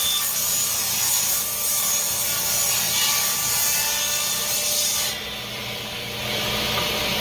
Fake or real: real